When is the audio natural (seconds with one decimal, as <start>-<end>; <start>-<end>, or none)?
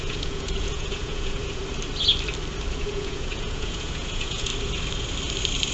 1.6-2.7; 4.5-5.7